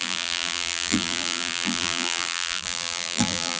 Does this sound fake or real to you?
fake